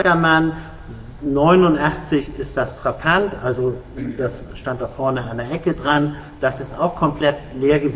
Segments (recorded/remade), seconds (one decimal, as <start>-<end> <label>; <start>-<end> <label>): 0.0-2.2 recorded; 2.2-8.0 remade

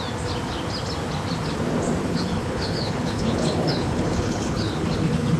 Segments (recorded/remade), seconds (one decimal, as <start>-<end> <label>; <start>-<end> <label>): 0.0-2.0 recorded; 2.0-5.4 remade

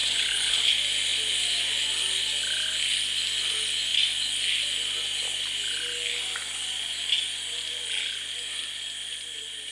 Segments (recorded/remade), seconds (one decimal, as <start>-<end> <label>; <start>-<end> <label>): 0.0-0.7 remade; 0.7-9.7 recorded

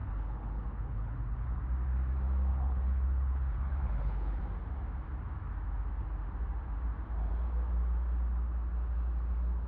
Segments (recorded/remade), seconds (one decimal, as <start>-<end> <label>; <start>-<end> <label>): 0.0-1.6 remade; 1.6-2.5 recorded; 2.5-4.4 remade; 4.4-9.7 recorded

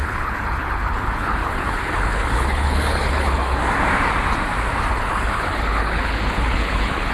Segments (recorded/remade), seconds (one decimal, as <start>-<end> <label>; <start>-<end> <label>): 0.0-3.6 remade; 3.6-4.9 recorded; 4.9-7.1 remade

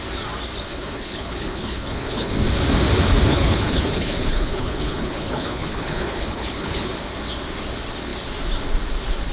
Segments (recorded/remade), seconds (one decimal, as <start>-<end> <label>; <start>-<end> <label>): 0.0-0.7 recorded; 0.7-2.3 remade; 2.3-3.3 recorded; 3.3-6.9 remade; 6.9-9.3 recorded

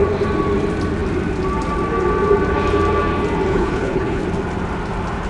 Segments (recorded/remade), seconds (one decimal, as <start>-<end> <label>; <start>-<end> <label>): 0.0-3.5 recorded; 3.5-4.2 remade; 4.2-5.3 recorded